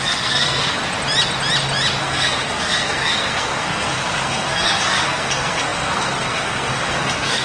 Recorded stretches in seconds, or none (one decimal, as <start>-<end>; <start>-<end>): 0.8-2.0